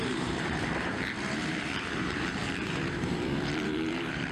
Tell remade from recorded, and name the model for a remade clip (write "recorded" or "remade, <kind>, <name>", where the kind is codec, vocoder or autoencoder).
remade, vocoder, BigVGAN v2